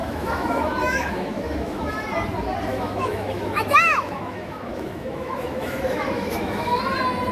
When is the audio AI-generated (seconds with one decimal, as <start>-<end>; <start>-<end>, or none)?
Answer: 0.0-1.9; 2.7-6.8